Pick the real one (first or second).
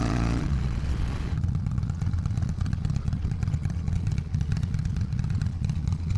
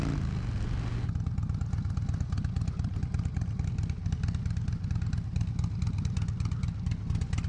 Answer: second